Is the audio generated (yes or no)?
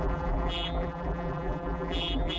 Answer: yes